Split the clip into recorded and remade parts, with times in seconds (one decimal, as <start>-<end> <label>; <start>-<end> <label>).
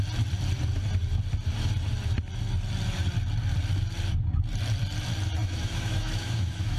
0.0-5.4 recorded; 5.4-6.8 remade